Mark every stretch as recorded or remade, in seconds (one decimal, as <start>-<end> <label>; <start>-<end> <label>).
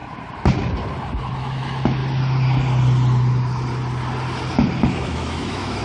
0.0-1.3 recorded; 1.3-2.0 remade; 2.0-4.9 recorded; 4.9-5.8 remade